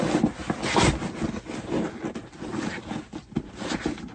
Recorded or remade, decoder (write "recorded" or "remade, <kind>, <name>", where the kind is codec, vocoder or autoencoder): recorded